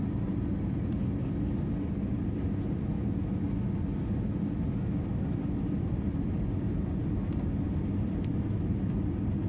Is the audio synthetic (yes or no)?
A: no